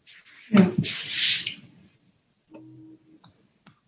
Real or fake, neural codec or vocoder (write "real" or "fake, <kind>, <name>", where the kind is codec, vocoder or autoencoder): real